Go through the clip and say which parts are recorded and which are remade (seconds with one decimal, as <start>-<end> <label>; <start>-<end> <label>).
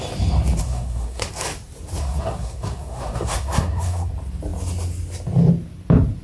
0.0-0.6 recorded; 0.6-1.3 remade; 1.3-2.0 recorded; 2.0-4.1 remade; 4.1-6.2 recorded